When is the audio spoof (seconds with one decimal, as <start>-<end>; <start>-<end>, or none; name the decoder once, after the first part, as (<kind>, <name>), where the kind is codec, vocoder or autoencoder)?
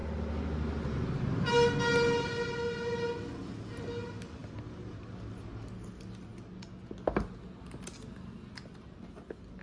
none